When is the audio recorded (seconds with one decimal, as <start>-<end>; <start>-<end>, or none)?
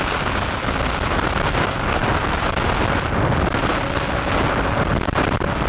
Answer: 0.0-5.7